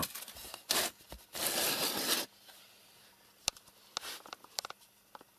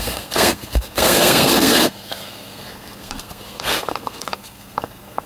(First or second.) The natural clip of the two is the first